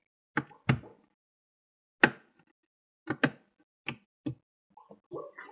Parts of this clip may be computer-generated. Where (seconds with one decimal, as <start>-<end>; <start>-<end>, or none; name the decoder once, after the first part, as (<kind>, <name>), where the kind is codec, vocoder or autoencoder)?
none